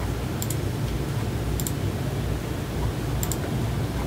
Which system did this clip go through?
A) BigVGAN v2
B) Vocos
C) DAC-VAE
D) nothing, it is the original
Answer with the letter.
D